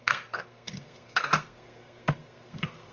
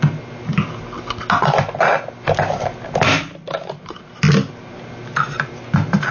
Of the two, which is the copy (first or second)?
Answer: first